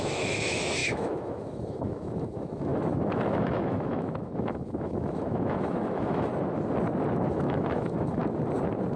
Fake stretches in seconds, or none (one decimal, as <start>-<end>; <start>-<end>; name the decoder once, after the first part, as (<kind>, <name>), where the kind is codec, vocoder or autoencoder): 0.0-6.3 (autoencoder, DAC-VAE); 7.3-8.2